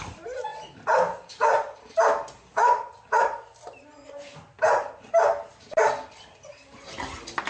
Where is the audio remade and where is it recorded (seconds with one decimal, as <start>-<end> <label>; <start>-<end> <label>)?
0.0-7.5 recorded